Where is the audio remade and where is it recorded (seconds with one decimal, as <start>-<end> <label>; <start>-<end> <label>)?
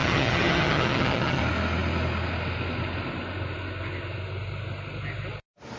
0.0-1.4 remade; 1.4-5.8 recorded